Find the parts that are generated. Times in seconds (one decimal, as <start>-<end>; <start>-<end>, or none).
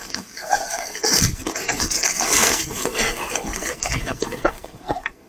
0.0-5.3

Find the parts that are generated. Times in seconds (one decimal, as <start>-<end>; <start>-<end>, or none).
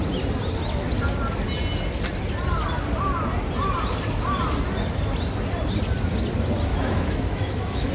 6.7-7.9